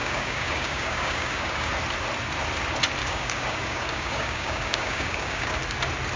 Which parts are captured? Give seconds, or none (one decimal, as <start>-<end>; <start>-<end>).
1.7-3.0; 5.6-6.2